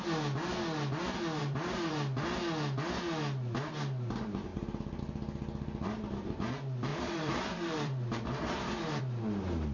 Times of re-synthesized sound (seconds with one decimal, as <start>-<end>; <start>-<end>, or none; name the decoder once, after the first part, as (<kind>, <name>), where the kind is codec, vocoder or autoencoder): 1.4-1.9 (vocoder, BigVGAN v2); 4.5-5.0; 6.9-9.0